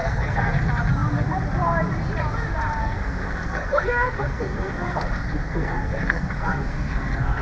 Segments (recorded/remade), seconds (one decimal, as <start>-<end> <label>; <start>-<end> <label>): 0.0-0.5 remade; 0.5-2.8 recorded; 2.8-7.4 remade